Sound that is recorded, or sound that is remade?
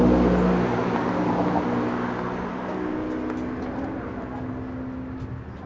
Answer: recorded